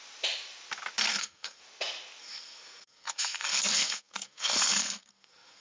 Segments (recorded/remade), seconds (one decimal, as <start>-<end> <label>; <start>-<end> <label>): 0.0-1.1 recorded; 1.1-1.6 remade; 1.6-2.2 recorded; 2.2-5.6 remade